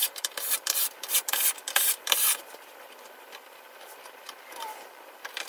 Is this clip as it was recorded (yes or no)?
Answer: no